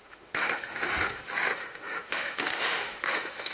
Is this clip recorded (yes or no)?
no